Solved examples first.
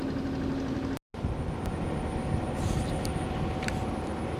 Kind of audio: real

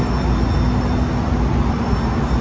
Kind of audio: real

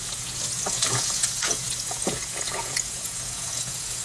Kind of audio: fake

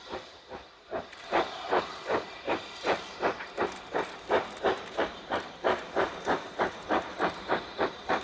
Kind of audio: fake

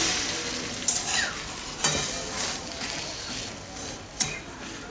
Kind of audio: real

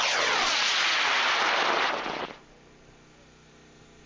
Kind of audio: real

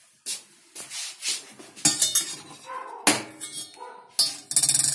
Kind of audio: real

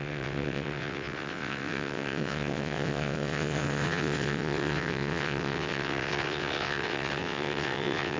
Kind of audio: fake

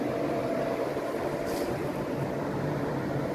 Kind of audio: fake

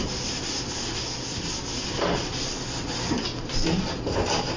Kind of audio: real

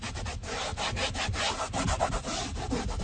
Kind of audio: real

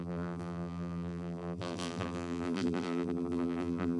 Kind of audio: fake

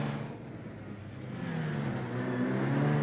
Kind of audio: real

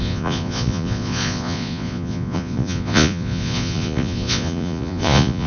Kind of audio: fake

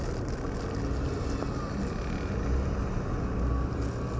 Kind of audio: real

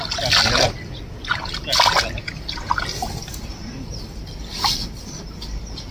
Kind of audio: real